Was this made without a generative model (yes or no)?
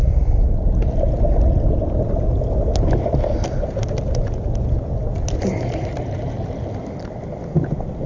yes